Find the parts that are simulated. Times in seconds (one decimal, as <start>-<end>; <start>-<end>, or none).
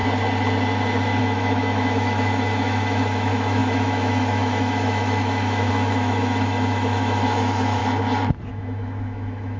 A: 1.2-7.8; 8.5-9.6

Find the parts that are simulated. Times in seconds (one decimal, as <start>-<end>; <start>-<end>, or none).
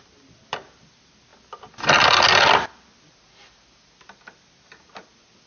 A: none